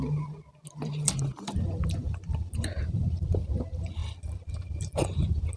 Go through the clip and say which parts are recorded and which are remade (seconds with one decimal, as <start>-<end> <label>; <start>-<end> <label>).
0.0-5.6 recorded